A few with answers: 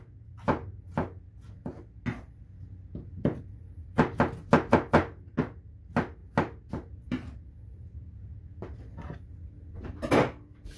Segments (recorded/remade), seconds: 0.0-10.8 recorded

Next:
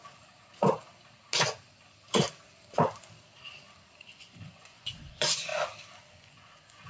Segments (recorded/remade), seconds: 0.0-4.1 recorded; 4.1-5.5 remade; 5.5-6.1 recorded; 6.1-6.9 remade

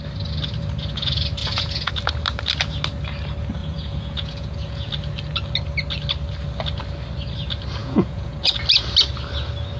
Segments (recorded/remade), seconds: 0.0-1.4 recorded; 1.4-1.9 remade; 1.9-3.6 recorded; 3.6-4.9 remade; 4.9-7.8 recorded; 7.8-8.5 remade; 8.5-9.8 recorded

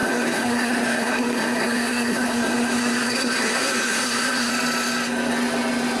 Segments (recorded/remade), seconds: 0.0-4.5 remade; 4.5-6.0 recorded

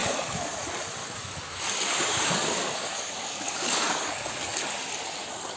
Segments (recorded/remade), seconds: 0.0-0.5 remade; 0.5-1.0 recorded; 1.0-4.4 remade; 4.4-5.6 recorded

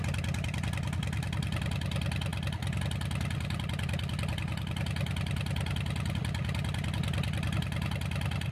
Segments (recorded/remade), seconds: 0.0-8.5 recorded

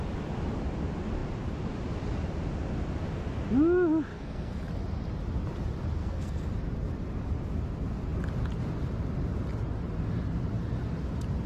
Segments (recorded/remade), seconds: 0.0-4.1 recorded; 4.1-4.6 remade; 4.6-6.0 recorded; 6.0-6.5 remade; 6.5-11.5 recorded